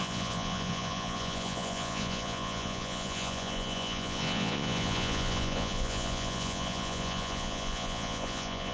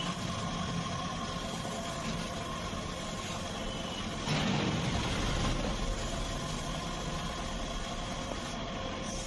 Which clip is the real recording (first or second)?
second